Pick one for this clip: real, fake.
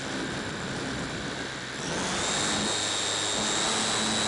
real